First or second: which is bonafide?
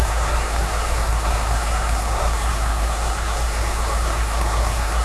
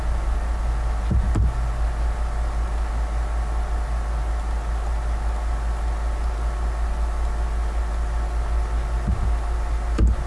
second